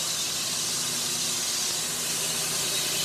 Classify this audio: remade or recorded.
recorded